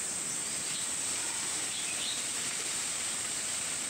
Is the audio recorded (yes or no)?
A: no